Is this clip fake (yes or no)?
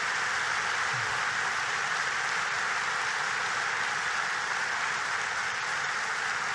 no